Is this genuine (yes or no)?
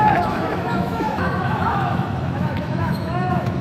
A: no